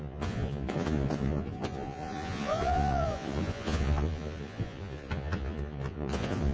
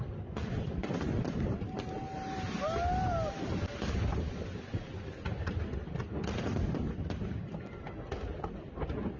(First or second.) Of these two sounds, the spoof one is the first